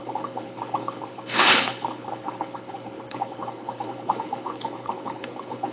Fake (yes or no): yes